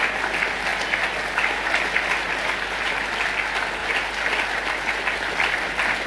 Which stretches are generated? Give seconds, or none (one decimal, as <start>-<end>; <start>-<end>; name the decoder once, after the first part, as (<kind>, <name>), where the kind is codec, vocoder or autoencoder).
0.7-2.9 (vocoder, BigVGAN v2); 3.8-6.1